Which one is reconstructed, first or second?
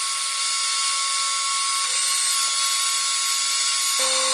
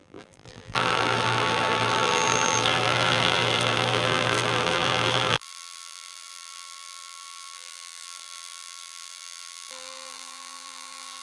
second